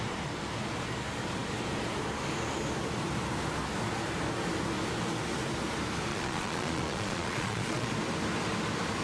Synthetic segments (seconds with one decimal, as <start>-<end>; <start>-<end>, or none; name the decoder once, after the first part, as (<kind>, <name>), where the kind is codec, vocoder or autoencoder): 6.1-7.9 (vocoder, Vocos)